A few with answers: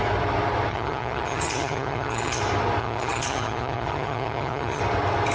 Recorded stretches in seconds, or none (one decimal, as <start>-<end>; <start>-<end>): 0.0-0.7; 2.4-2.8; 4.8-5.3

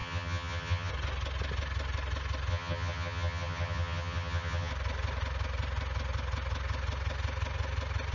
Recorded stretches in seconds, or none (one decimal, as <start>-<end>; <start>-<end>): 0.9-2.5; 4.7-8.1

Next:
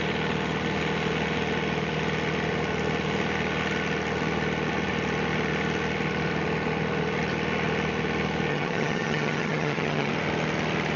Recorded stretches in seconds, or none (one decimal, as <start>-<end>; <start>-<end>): 0.0-8.5; 10.1-11.0

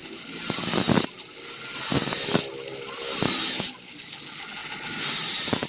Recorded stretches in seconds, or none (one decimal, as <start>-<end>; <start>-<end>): 0.0-5.7

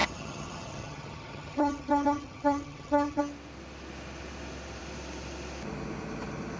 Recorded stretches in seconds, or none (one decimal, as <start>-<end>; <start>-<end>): 3.2-6.6

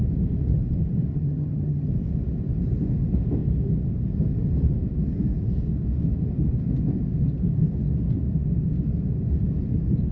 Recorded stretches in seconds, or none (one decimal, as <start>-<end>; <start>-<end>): 0.0-1.1; 1.9-10.1

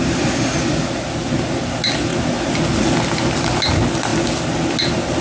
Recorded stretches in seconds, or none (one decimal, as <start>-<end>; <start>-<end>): 0.0-5.2

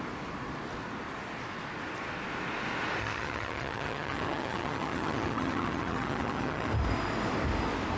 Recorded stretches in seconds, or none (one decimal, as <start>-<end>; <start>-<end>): 0.0-3.0; 6.7-8.0